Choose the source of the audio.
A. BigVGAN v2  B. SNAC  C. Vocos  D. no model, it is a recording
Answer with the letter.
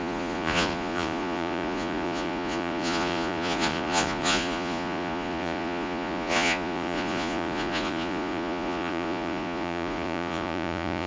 C